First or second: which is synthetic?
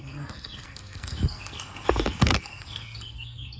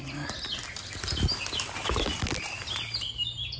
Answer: first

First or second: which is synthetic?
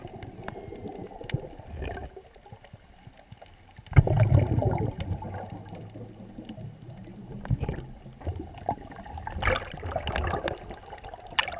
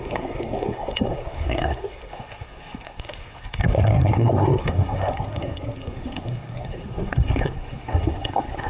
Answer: second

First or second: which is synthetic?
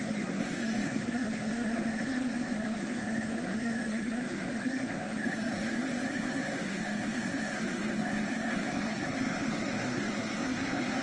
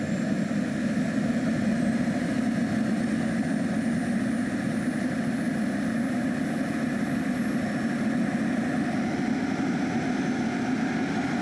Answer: first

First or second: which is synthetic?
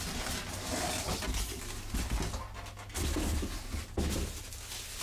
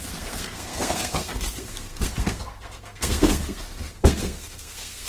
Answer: second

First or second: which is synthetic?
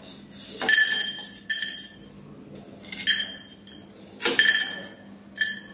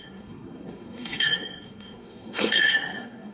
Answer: second